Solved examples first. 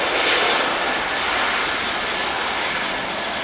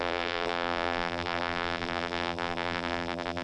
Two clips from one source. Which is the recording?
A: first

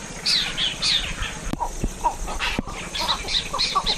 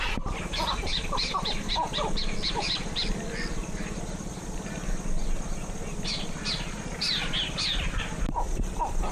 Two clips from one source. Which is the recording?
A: second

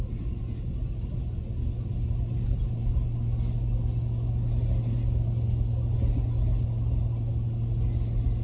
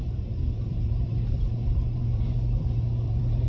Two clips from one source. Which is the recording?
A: first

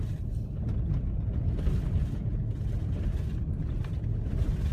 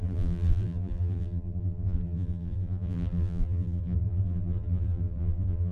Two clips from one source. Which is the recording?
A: first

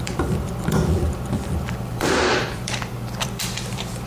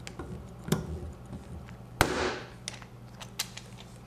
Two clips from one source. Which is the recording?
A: second